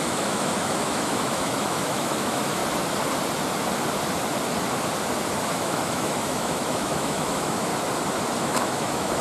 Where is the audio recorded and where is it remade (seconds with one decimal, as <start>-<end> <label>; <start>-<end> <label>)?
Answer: 0.0-2.6 remade; 2.6-5.5 recorded; 5.5-7.7 remade; 7.7-8.4 recorded; 8.4-9.2 remade